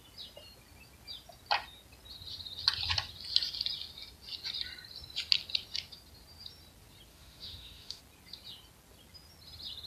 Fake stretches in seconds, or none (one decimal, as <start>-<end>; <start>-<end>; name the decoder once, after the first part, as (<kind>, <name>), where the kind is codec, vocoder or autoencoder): 7.1-8.0 (autoencoder, DAC-VAE)